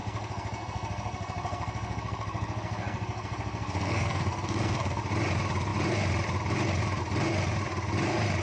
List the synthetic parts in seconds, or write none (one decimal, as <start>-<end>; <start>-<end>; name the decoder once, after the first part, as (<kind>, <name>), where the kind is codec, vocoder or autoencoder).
0.0-5.0 (codec, SNAC)